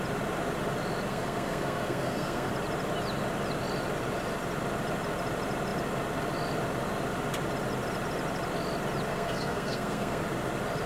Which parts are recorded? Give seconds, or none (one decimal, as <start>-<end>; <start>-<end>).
0.0-1.1; 2.5-9.1; 10.2-10.9